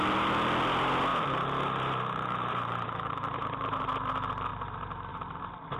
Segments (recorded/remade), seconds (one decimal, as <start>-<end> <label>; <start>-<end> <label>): 0.0-1.1 recorded; 1.1-3.8 remade; 3.8-5.8 recorded